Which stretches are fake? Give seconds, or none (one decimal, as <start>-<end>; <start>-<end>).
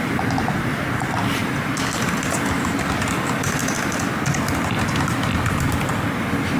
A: none